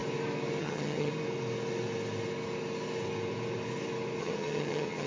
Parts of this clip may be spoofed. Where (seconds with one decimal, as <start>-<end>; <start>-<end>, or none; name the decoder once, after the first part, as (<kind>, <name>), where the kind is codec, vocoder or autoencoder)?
0.6-1.1 (vocoder, HiFi-GAN); 4.2-5.1